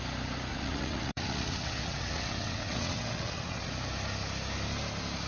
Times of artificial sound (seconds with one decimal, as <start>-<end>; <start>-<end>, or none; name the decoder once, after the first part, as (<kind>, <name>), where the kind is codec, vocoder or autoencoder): 0.5-3.7 (vocoder, WaveNeXt)